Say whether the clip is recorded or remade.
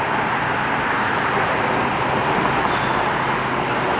recorded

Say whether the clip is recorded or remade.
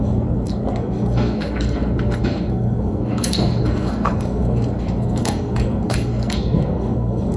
remade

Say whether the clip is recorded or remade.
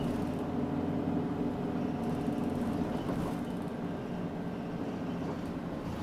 recorded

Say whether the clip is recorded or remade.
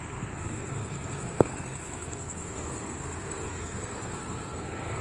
remade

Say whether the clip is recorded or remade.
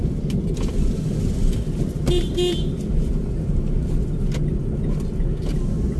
recorded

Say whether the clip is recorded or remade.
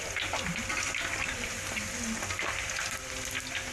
recorded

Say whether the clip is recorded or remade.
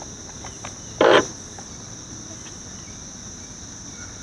recorded